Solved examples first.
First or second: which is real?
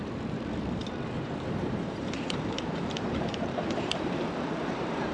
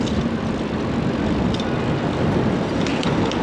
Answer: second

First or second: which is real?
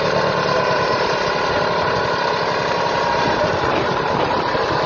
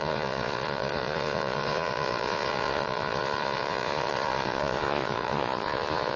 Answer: first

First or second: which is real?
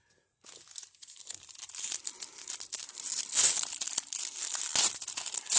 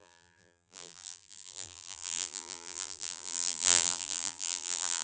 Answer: first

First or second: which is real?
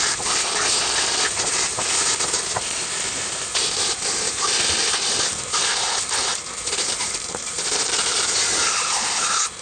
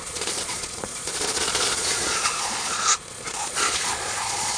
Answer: first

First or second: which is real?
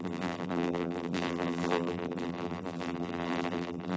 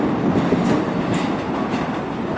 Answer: second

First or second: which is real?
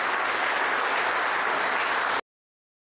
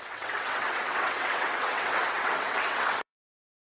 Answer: first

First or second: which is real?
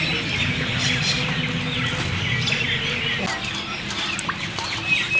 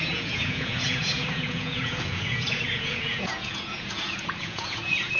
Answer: first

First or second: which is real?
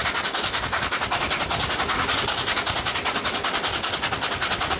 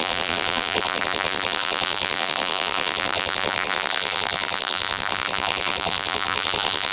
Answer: first